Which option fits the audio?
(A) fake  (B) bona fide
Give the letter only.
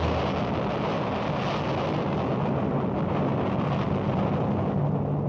B